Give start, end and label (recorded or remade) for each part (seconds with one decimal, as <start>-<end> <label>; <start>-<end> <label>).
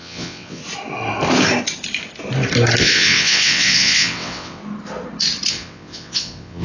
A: 0.0-0.6 remade; 0.6-2.8 recorded; 2.8-4.6 remade; 4.6-5.5 recorded; 5.5-6.6 remade